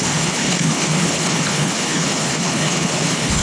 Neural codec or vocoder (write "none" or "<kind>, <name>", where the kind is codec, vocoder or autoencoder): codec, HILCodec